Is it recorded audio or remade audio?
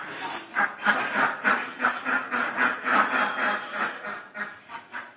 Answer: recorded